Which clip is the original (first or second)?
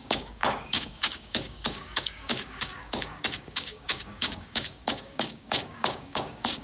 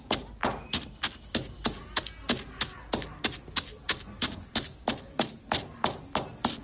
second